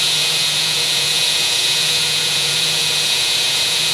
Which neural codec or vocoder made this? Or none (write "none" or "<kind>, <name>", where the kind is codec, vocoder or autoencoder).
vocoder, Vocos